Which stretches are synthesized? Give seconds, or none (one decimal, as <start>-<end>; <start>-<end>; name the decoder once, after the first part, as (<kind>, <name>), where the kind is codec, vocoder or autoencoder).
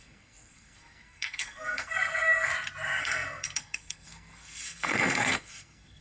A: 0.0-2.5 (codec, SNAC); 3.0-6.0